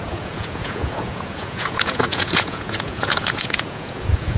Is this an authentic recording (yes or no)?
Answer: no